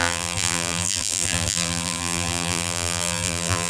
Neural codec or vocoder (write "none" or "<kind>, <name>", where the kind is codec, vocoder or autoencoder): vocoder, BigVGAN v2